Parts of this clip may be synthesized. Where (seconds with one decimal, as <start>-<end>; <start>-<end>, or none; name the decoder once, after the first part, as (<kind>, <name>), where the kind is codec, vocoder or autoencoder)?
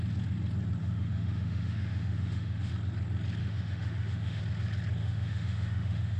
0.8-2.7 (autoencoder, DAC-VAE); 3.4-4.4; 5.0-6.2